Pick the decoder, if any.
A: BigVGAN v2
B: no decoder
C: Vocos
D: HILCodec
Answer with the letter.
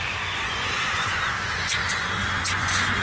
C